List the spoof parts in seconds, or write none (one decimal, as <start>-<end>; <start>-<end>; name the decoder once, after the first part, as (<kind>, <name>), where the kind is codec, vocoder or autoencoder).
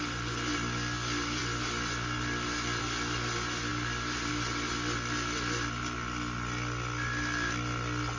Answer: none